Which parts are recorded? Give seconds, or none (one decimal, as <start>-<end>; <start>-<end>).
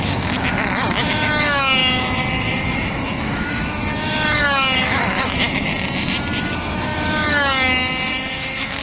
5.7-6.4